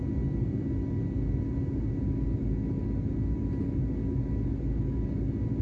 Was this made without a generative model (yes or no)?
yes